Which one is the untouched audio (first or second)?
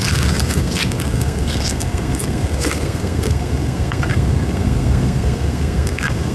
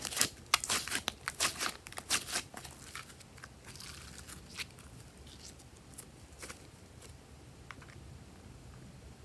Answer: second